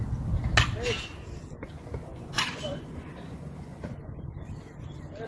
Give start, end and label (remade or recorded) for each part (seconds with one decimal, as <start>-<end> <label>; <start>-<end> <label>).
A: 0.0-2.1 recorded; 2.1-4.2 remade; 4.2-5.3 recorded